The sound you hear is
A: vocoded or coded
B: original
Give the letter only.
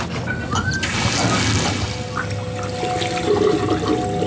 B